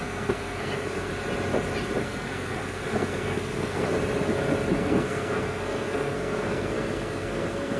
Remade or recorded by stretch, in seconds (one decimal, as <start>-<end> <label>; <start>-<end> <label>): 0.0-1.1 remade; 1.1-2.0 recorded; 2.0-3.9 remade; 3.9-4.7 recorded; 4.7-7.8 remade